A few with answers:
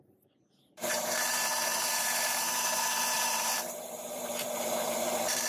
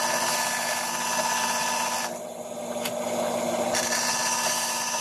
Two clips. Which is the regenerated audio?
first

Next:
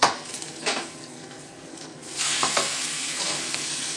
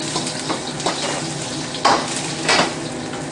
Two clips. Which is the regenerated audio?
first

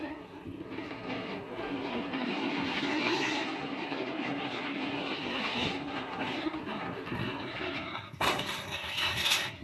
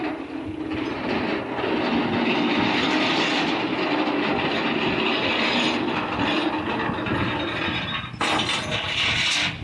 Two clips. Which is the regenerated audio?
first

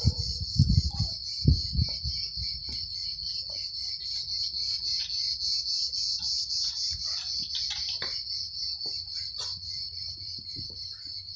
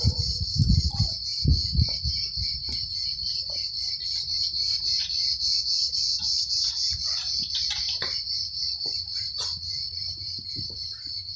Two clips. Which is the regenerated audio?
second